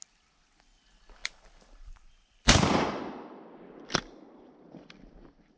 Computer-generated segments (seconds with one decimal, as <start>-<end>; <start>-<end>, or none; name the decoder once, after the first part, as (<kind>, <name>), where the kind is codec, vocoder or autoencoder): 1.2-4.6 (vocoder, BigVGAN v2)